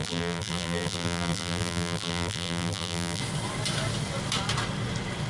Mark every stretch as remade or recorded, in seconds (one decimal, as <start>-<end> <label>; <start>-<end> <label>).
0.0-3.2 remade; 3.2-5.3 recorded